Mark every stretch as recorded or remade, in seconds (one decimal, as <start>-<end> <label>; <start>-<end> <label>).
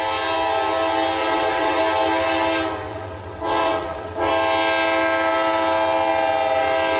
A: 0.0-1.2 recorded; 1.2-1.8 remade; 1.8-2.9 recorded; 2.9-4.3 remade; 4.3-7.0 recorded